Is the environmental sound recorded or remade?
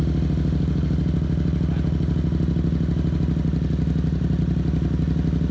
recorded